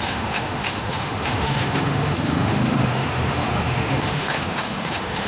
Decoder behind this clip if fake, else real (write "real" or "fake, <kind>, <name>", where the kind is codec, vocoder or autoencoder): fake, autoencoder, DAC-VAE